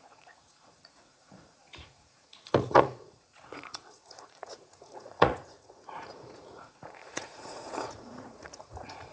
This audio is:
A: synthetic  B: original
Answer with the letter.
A